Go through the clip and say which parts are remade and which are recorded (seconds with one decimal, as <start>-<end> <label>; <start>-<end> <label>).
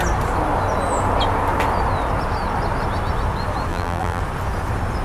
0.0-3.7 recorded; 3.7-4.2 remade; 4.2-5.0 recorded